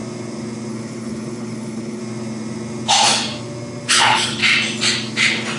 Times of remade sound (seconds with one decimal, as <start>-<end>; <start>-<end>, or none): 0.7-2.0; 3.9-4.4